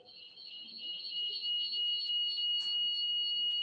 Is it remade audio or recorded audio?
recorded